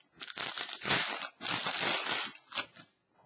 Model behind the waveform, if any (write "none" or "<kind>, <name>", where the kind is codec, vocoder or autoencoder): none